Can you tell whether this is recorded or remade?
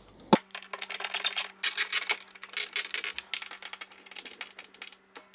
recorded